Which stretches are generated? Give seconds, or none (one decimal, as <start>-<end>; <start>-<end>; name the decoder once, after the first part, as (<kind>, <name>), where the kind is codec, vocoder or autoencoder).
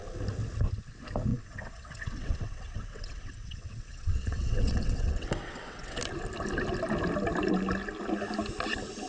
1.3-6.0 (vocoder, WaveNeXt)